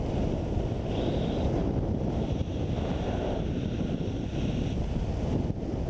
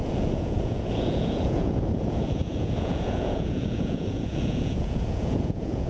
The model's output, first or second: second